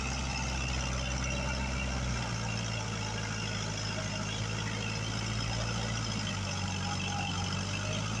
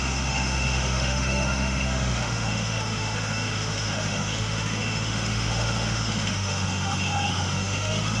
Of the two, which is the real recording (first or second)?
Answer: first